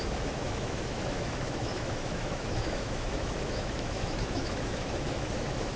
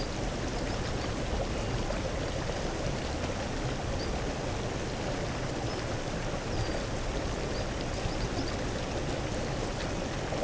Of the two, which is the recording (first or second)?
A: second